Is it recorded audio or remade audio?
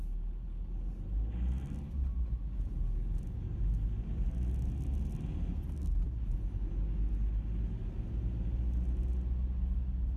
recorded